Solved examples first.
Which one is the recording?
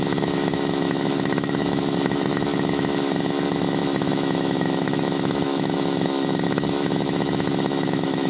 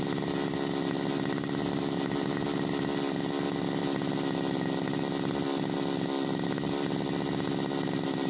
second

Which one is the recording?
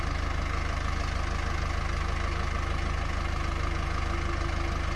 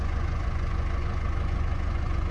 first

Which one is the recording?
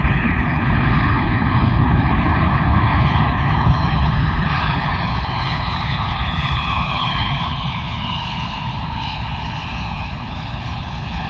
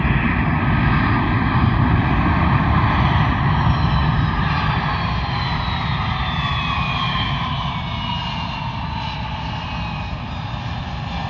second